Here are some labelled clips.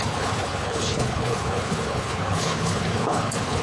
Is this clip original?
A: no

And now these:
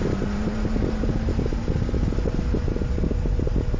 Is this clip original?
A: yes